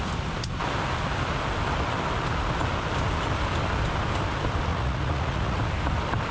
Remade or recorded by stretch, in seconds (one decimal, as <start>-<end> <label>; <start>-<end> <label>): 0.0-4.7 recorded; 4.7-5.6 remade; 5.6-6.3 recorded